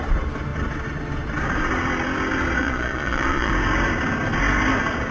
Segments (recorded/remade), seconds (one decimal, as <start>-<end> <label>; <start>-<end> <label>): 0.0-2.6 recorded; 2.6-3.5 remade; 3.5-5.1 recorded